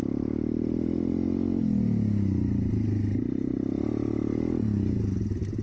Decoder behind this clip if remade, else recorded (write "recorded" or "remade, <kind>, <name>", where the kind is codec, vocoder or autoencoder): recorded